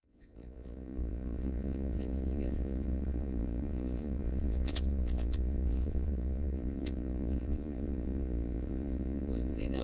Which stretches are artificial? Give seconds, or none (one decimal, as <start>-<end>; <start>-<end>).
0.0-9.8